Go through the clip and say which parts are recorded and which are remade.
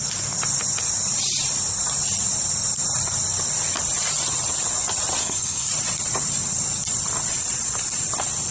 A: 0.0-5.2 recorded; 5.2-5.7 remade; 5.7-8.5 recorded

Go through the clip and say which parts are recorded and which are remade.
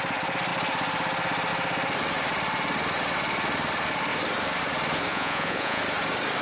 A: 0.0-5.1 recorded; 5.1-5.8 remade; 5.8-6.4 recorded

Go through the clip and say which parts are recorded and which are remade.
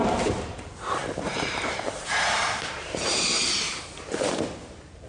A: 0.0-1.0 recorded; 1.0-3.8 remade; 3.8-5.1 recorded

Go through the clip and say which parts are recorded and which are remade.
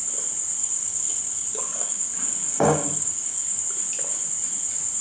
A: 0.0-0.6 recorded; 0.6-3.6 remade; 3.6-5.0 recorded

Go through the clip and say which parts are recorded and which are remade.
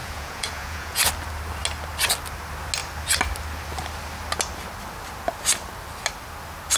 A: 0.0-1.1 remade; 1.1-6.8 recorded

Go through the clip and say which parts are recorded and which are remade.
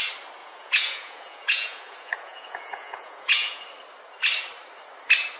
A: 0.0-0.4 recorded; 0.4-3.6 remade; 3.6-5.4 recorded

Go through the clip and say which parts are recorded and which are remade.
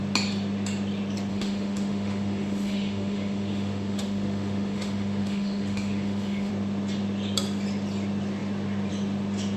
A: 0.0-1.3 recorded; 1.3-6.5 remade; 6.5-9.6 recorded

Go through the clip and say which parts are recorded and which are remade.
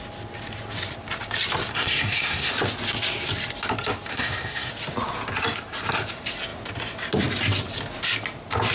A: 0.0-1.7 recorded; 1.7-2.5 remade; 2.5-4.1 recorded; 4.1-4.7 remade; 4.7-8.7 recorded